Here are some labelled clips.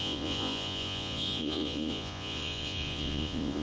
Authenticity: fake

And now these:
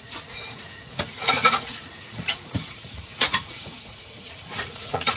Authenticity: fake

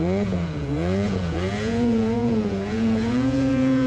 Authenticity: fake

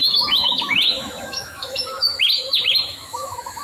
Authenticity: fake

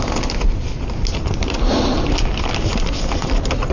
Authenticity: real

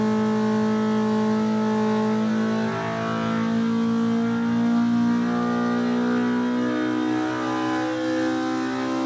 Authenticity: real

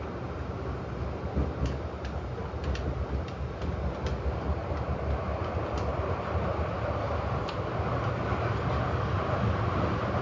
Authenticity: real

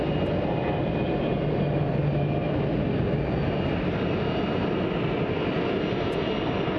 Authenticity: real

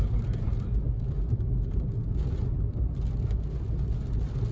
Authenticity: real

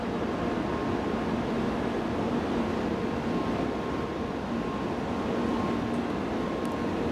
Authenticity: real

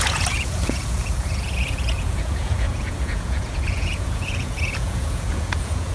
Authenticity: fake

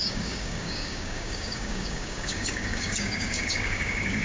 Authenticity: fake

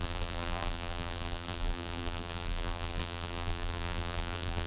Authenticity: fake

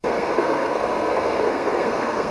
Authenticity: fake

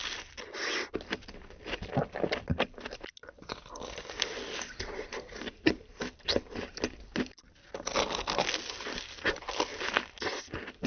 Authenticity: real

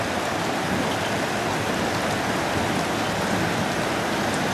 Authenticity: real